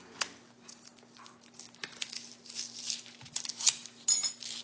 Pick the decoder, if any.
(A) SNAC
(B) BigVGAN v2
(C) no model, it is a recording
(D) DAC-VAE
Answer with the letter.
C